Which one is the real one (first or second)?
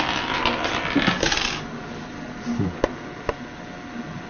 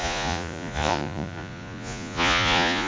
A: first